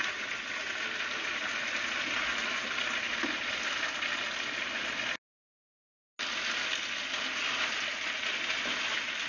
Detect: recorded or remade recorded